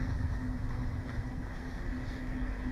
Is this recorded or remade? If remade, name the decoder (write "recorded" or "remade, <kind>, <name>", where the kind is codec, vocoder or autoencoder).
remade, codec, SNAC